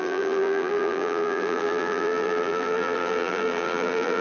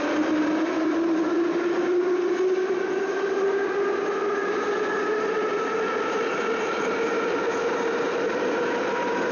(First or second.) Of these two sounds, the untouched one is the second